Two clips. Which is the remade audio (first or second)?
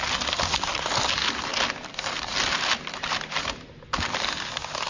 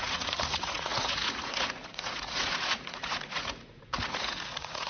second